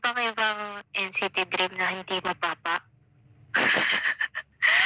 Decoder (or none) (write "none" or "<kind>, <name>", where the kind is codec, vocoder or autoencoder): none